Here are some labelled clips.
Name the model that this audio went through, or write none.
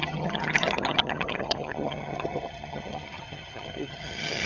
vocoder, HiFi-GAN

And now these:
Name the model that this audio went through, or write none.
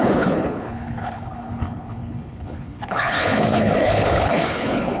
codec, HILCodec